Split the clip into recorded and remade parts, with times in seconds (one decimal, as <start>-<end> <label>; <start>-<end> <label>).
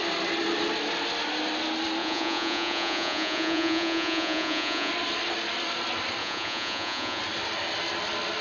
0.0-2.0 recorded; 2.0-4.9 remade; 4.9-6.2 recorded; 6.2-7.2 remade; 7.2-8.4 recorded